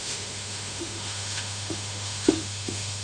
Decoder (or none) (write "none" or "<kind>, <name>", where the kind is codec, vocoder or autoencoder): autoencoder, DAC-VAE